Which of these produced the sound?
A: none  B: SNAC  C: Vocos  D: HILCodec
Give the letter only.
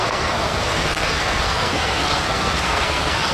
B